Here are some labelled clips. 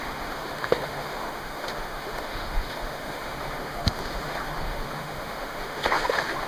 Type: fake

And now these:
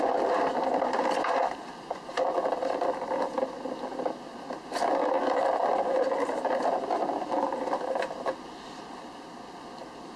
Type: real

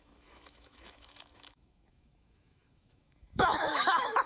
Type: fake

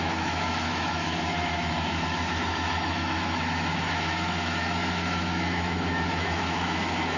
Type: fake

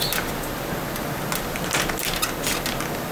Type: real